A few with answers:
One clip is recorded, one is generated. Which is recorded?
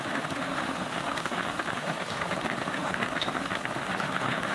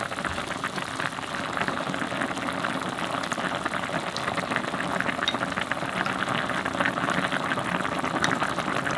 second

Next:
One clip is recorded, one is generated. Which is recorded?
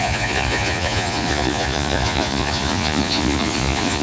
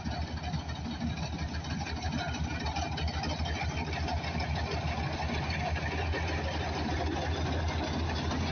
second